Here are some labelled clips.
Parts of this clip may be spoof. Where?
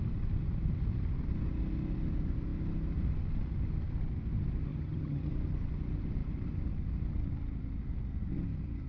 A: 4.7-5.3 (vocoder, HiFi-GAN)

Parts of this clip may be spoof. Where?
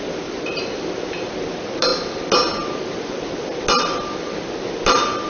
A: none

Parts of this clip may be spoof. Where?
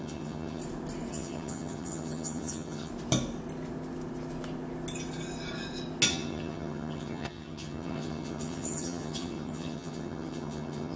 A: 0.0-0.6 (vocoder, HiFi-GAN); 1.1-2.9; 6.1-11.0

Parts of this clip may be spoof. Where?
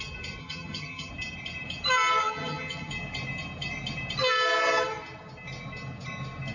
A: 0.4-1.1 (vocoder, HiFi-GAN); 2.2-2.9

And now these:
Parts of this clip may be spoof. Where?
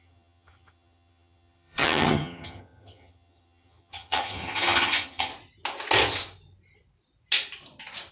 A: 0.0-5.3 (vocoder, HiFi-GAN)